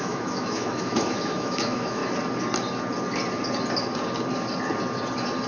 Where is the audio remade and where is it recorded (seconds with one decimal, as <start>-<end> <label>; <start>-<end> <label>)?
0.0-2.0 remade; 2.0-5.5 recorded